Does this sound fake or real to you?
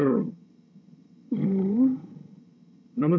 fake